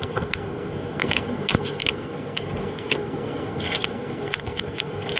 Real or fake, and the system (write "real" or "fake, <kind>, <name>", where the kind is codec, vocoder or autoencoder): fake, codec, SNAC